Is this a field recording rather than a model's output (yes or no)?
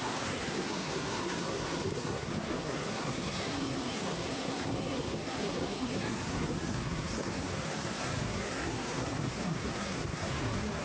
no